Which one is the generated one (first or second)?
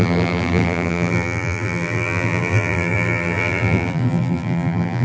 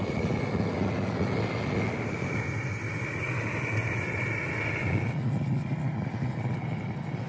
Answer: first